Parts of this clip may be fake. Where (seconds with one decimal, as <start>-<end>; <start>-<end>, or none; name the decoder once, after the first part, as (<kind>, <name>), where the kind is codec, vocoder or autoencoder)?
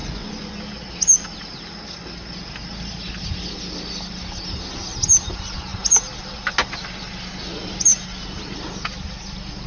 0.0-0.6 (vocoder, Vocos)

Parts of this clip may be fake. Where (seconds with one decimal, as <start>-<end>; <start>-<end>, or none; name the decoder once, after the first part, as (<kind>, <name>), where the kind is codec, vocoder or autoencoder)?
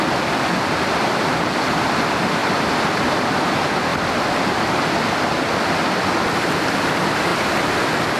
none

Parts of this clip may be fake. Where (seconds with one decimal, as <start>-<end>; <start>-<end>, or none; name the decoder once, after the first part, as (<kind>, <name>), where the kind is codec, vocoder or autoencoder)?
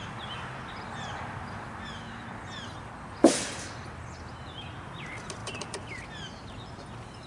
none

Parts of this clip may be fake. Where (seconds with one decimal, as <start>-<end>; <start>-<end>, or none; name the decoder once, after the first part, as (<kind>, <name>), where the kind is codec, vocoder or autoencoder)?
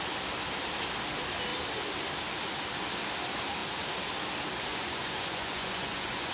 4.7-6.3 (vocoder, Vocos)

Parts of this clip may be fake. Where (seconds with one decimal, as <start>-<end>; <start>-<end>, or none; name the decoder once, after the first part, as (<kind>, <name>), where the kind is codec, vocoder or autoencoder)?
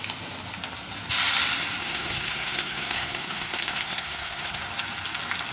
1.8-4.6 (codec, SNAC)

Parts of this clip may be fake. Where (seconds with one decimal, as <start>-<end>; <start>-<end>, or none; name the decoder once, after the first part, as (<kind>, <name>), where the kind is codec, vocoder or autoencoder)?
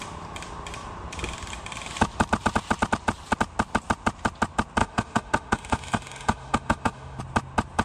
4.8-7.2 (autoencoder, DAC-VAE)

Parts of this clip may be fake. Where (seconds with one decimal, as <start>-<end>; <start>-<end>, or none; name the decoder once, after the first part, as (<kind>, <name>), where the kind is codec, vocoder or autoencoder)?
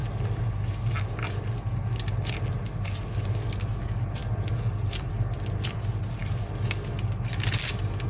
none